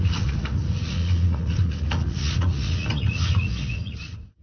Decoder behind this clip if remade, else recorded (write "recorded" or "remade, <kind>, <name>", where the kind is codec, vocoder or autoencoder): remade, vocoder, Vocos